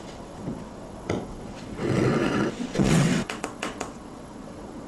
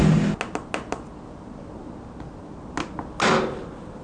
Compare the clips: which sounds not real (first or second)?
first